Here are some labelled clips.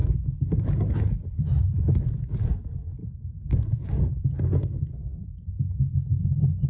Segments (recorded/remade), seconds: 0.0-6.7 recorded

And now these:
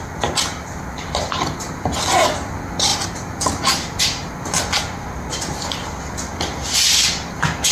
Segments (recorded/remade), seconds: 0.0-7.7 recorded

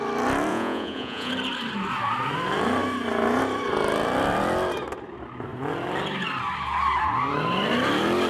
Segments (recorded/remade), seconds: 0.0-0.5 recorded; 0.5-1.3 remade; 1.3-8.3 recorded

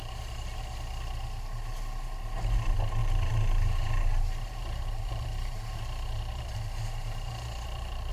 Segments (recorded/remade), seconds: 0.0-0.6 remade; 0.6-3.0 recorded; 3.0-8.1 remade

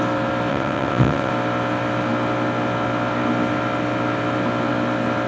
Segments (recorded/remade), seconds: 0.0-0.5 recorded; 0.5-1.3 remade; 1.3-5.3 recorded

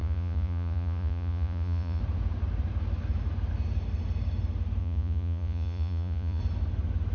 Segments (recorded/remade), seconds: 0.0-2.0 remade; 2.0-4.8 recorded; 4.8-6.4 remade; 6.4-7.1 recorded

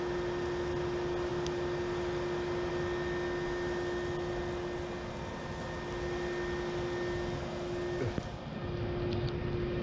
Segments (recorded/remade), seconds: 0.0-9.8 recorded

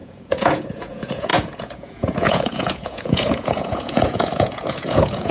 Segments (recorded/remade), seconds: 0.0-5.3 remade